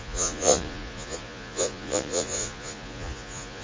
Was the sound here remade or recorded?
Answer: remade